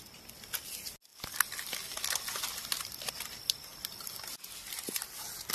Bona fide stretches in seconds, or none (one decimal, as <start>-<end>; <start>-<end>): 0.0-5.5